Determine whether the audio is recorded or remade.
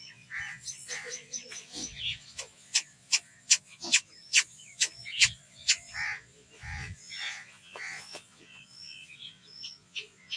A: remade